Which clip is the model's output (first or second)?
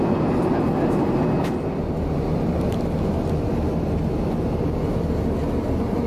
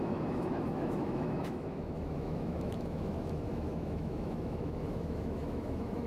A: second